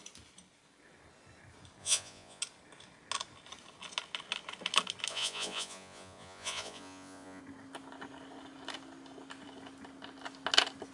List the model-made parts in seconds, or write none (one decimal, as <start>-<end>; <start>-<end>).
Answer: 1.8-2.4; 5.1-7.4